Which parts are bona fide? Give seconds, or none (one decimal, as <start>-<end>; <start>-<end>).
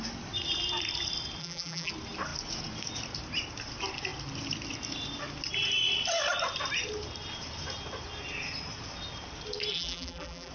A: 0.0-1.4; 1.9-9.7